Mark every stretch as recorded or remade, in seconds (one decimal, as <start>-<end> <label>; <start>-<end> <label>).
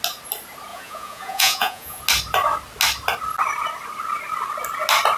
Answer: 0.0-0.7 recorded; 0.7-2.0 remade; 2.0-5.2 recorded